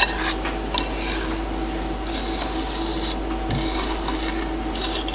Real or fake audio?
real